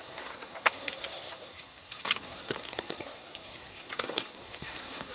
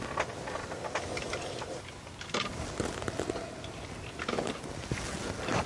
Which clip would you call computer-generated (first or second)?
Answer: first